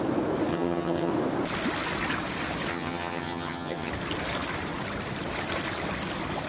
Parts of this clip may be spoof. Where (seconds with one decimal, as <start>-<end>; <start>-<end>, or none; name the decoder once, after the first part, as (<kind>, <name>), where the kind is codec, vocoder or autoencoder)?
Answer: 0.5-1.1 (vocoder, HiFi-GAN); 2.7-3.9

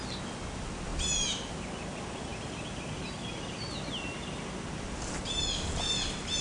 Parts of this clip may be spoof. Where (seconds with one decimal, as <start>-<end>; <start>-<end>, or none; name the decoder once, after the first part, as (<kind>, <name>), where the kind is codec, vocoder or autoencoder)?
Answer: none

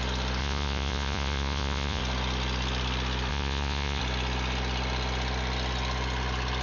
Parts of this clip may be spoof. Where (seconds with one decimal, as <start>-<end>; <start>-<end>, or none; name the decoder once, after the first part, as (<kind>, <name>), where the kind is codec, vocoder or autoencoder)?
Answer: 0.4-2.0 (vocoder, Vocos); 3.3-4.0

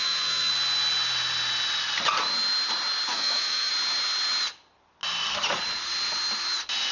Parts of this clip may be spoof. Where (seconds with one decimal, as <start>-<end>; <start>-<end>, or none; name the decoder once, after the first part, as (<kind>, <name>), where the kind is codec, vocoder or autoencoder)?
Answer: 0.0-0.5 (autoencoder, DAC-VAE); 3.1-3.7

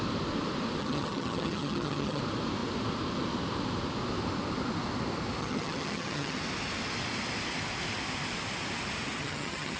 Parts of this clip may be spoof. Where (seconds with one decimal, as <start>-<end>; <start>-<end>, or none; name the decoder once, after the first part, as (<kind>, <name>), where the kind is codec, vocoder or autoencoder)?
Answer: 0.8-2.2 (vocoder, HiFi-GAN); 5.4-6.4; 9.2-9.8

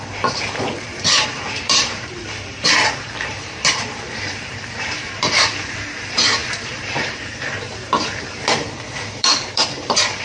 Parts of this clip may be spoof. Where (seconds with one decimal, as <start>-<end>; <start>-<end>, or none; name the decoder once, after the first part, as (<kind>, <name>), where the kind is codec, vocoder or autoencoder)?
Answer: 0.0-10.2 (vocoder, BigVGAN v2)